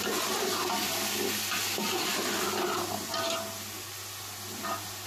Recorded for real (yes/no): yes